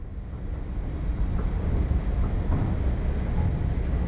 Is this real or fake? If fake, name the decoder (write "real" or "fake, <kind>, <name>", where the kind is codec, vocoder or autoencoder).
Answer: real